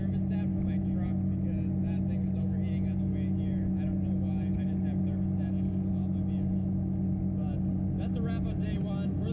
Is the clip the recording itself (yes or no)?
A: yes